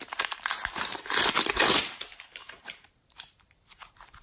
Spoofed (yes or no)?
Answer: yes